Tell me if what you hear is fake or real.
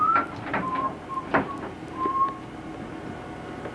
real